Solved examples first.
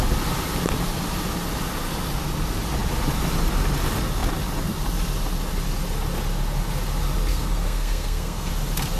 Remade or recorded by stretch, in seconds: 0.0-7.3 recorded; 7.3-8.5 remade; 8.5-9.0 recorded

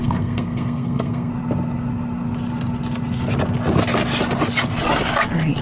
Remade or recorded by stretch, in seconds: 0.0-1.3 remade; 1.3-5.6 recorded